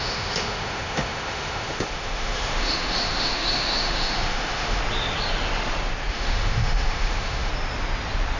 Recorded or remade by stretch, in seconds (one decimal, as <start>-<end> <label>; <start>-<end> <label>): 0.0-4.8 remade; 4.8-6.1 recorded; 6.1-7.5 remade; 7.5-8.4 recorded